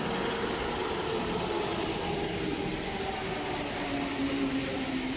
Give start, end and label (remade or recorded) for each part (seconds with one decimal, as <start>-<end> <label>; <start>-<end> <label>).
0.0-5.2 recorded